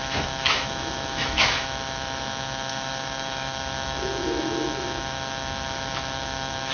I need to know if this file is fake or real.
fake